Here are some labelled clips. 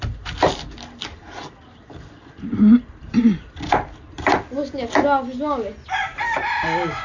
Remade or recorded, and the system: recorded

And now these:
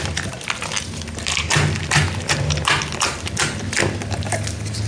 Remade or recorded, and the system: recorded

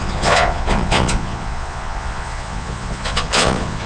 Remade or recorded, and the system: remade, vocoder, Vocos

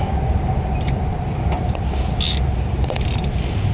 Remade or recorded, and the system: recorded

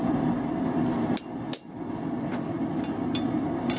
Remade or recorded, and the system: recorded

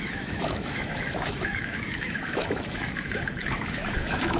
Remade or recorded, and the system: remade, autoencoder, DAC-VAE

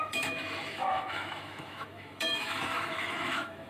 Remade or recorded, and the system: remade, autoencoder, DAC-VAE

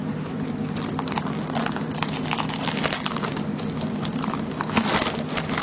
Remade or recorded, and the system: recorded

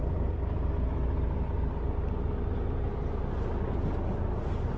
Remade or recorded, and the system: recorded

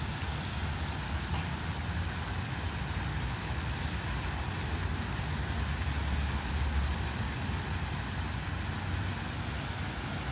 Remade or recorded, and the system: recorded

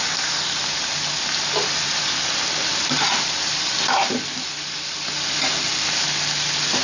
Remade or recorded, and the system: recorded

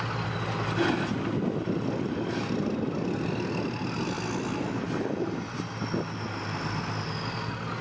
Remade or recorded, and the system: recorded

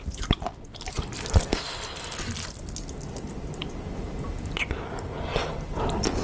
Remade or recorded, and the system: recorded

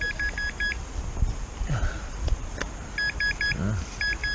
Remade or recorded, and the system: recorded